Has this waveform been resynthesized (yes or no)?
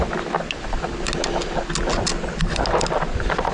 no